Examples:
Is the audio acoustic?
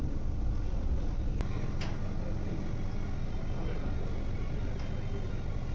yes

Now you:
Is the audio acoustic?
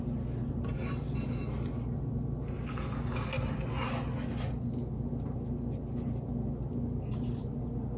yes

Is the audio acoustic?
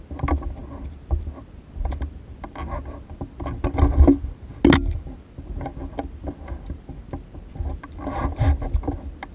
yes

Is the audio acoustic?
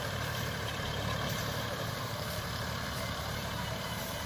no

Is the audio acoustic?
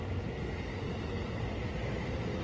yes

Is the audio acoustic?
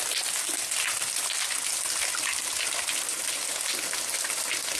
yes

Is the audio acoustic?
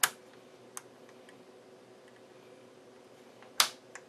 yes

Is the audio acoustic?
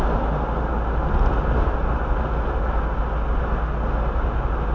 yes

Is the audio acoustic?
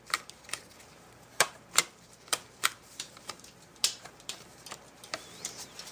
no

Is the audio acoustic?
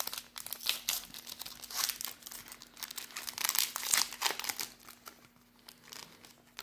yes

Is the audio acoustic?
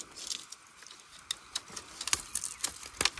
yes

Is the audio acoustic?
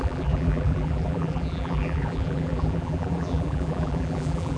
no